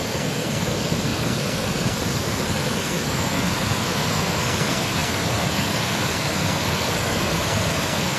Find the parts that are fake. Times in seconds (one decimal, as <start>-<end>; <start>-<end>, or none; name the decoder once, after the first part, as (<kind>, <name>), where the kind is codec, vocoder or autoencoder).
0.0-8.2 (codec, SNAC)